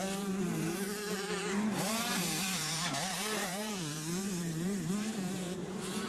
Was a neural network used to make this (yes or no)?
yes